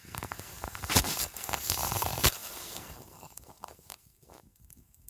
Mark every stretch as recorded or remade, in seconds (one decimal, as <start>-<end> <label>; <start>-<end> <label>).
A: 0.0-5.1 remade